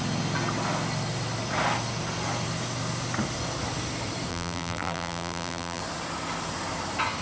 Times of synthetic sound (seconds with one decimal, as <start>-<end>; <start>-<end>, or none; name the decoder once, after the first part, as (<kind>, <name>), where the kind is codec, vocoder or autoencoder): 4.3-5.8 (vocoder, BigVGAN v2)